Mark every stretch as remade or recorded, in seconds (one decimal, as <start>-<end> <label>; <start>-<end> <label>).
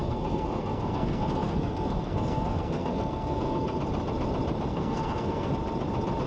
0.0-3.8 remade; 3.8-4.7 recorded; 4.7-5.5 remade; 5.5-6.3 recorded